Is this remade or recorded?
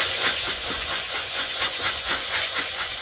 remade